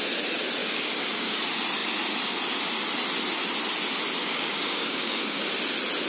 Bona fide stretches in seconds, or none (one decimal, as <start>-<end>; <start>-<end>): 0.0-0.6; 1.4-4.2; 5.5-6.1